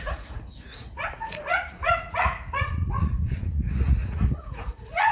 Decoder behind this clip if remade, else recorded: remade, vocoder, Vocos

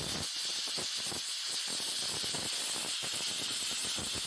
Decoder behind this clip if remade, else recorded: recorded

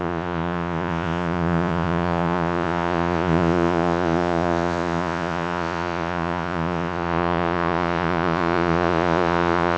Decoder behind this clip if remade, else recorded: remade, vocoder, Vocos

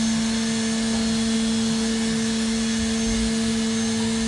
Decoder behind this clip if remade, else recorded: recorded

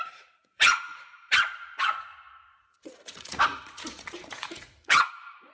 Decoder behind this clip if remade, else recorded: remade, vocoder, Vocos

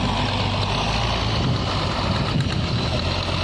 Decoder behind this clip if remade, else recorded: recorded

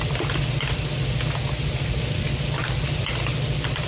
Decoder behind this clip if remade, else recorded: recorded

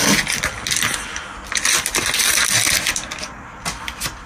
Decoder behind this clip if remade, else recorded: recorded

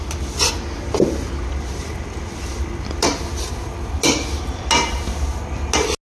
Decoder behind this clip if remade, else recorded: recorded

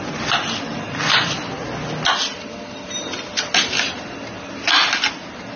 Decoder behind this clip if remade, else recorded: recorded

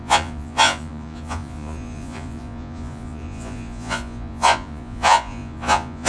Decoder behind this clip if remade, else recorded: remade, vocoder, Vocos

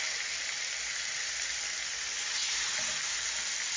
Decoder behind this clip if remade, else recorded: recorded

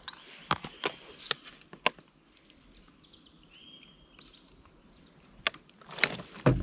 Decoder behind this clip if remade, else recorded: recorded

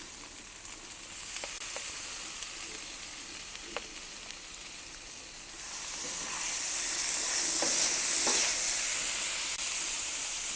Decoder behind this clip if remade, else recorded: recorded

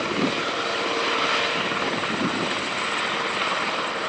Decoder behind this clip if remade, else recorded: recorded